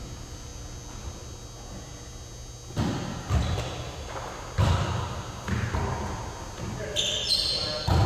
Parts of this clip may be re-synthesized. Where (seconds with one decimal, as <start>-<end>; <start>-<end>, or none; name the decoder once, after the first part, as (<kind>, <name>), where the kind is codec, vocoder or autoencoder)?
none